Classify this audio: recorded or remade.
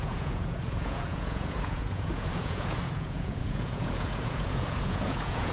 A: remade